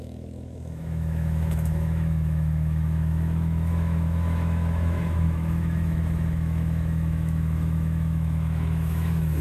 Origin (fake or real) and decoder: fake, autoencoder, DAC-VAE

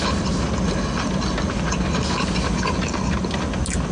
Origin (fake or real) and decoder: real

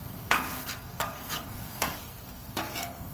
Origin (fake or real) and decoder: fake, codec, SNAC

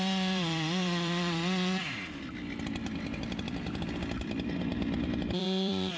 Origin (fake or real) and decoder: fake, vocoder, BigVGAN v2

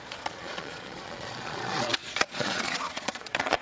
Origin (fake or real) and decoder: fake, vocoder, Vocos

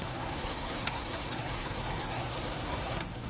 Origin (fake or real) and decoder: fake, codec, SNAC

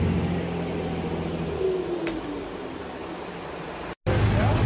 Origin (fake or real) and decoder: real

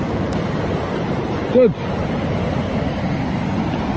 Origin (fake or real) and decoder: real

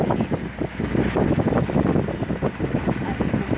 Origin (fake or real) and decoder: real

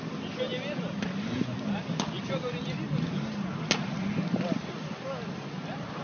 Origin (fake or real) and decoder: real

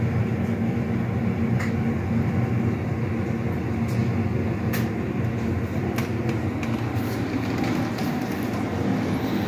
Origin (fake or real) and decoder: real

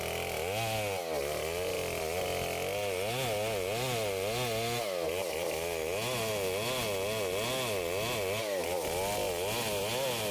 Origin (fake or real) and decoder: real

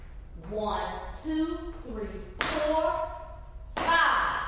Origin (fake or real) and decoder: real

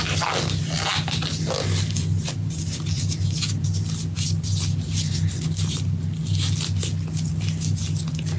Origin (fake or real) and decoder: real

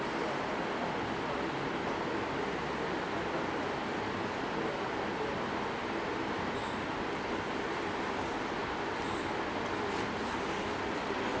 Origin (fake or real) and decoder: real